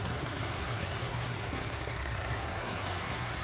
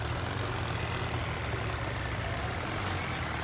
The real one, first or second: second